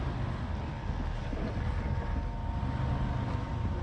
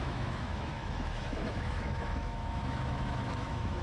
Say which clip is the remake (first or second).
second